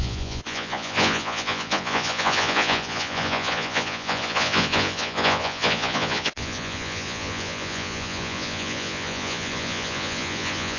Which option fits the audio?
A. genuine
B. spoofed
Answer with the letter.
B